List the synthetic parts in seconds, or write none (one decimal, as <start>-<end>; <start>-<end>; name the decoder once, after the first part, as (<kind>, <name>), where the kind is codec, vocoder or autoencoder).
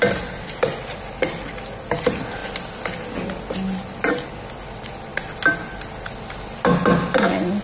none